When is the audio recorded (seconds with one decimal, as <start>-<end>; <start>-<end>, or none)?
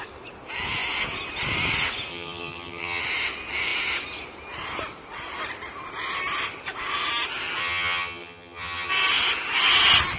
0.0-2.1; 3.0-7.6; 8.9-10.2